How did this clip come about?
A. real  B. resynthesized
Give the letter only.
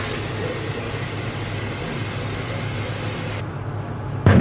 A